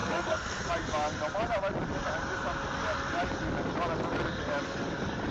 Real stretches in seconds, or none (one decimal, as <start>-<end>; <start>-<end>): 0.7-5.3